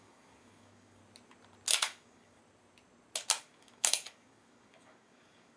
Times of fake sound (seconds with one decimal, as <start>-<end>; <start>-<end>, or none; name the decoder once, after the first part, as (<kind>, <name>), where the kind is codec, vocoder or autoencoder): 0.0-1.0 (codec, DAC); 1.8-2.4; 3.4-5.6